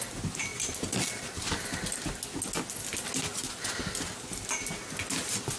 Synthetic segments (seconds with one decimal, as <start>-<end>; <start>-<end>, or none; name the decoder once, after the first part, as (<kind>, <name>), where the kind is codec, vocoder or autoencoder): none